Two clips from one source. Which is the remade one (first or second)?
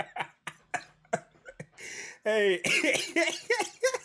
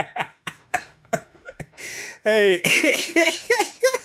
second